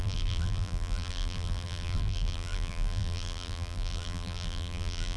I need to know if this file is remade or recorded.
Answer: remade